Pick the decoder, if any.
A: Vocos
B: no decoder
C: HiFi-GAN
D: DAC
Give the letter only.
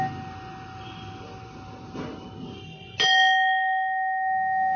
B